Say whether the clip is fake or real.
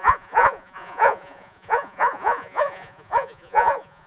fake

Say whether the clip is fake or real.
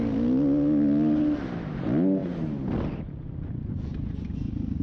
real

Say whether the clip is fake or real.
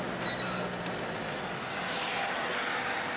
real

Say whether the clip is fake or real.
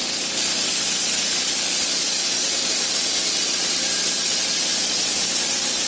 real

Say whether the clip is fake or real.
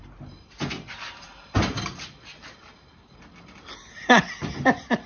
real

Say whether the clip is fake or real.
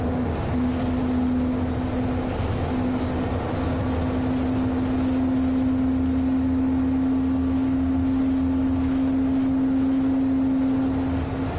real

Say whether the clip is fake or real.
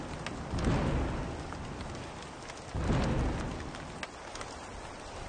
real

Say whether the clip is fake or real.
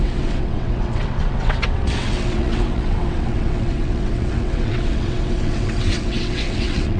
fake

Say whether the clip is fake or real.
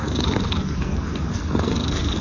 fake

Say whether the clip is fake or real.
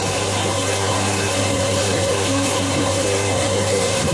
fake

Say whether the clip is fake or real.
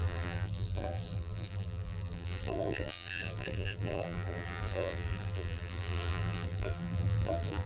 fake